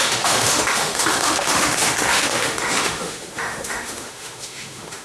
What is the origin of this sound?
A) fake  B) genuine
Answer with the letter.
A